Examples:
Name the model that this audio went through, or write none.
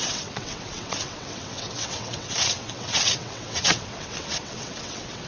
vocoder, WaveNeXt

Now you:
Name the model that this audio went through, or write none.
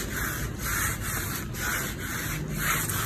none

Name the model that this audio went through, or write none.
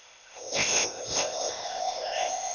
codec, ZipCodec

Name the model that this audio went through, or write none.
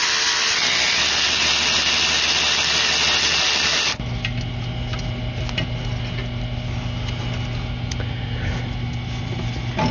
none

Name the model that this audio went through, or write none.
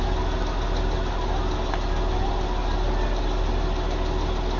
none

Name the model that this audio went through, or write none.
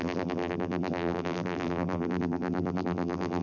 vocoder, BigVGAN v2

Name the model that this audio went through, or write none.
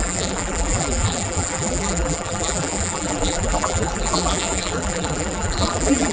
vocoder, BigVGAN v2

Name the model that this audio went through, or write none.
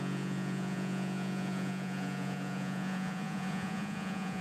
vocoder, Vocos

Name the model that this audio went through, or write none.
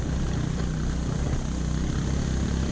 none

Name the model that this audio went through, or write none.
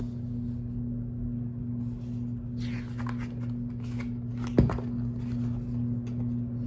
none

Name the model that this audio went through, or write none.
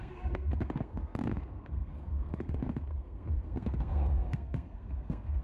codec, SNAC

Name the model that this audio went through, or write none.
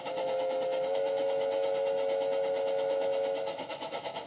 autoencoder, DAC-VAE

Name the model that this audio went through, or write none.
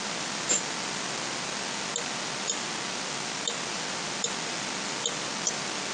none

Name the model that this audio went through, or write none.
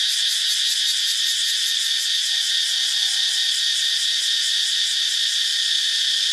vocoder, BigVGAN v2